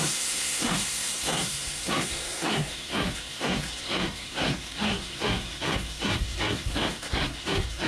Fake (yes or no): yes